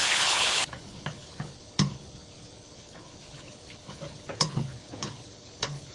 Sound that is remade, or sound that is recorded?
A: remade